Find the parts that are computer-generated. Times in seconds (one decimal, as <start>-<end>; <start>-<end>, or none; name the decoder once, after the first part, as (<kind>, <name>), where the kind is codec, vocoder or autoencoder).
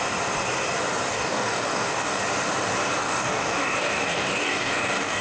1.1-2.2 (codec, DAC); 3.0-5.2